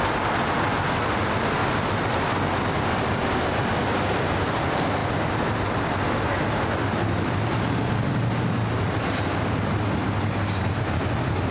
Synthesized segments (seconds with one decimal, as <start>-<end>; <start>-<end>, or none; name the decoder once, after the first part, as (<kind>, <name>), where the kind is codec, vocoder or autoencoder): 1.6-2.4 (vocoder, BigVGAN v2)